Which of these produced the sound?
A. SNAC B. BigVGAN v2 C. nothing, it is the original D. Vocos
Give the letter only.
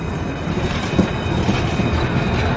C